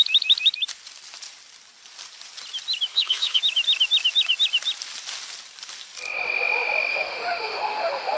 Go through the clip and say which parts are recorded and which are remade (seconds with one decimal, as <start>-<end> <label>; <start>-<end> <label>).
0.0-2.9 recorded; 2.9-3.4 remade; 3.4-6.9 recorded; 6.9-8.2 remade